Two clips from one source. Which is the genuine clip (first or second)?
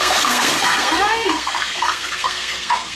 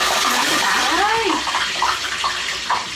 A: second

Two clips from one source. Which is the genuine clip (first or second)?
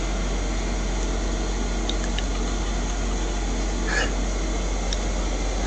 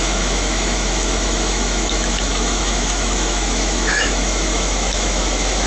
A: first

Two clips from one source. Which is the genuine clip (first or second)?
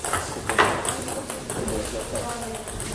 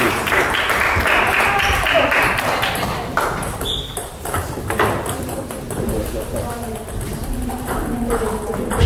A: first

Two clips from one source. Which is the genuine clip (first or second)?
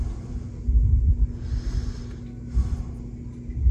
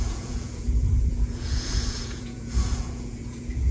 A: first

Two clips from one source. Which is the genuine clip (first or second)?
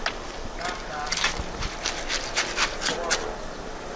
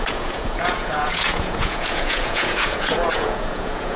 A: first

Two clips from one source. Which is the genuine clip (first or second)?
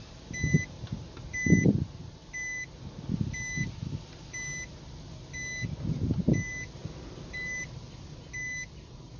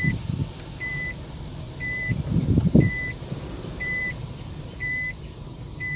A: first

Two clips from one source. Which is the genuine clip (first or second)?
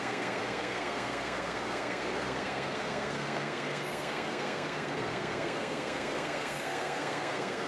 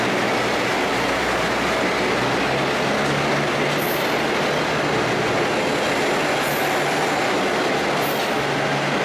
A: second